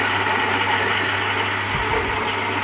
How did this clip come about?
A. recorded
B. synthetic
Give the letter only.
A